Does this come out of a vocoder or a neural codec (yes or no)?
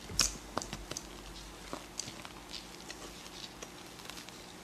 no